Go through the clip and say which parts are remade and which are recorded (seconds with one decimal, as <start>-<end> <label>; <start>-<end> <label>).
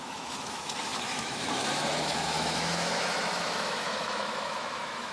0.0-5.1 remade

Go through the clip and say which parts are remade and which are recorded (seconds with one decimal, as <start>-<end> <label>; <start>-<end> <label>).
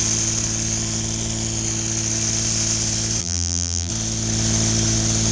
0.0-3.2 recorded; 3.2-3.9 remade; 3.9-5.3 recorded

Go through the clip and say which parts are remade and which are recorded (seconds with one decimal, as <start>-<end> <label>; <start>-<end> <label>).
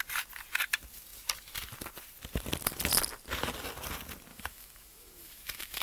0.0-4.3 recorded; 4.3-5.8 remade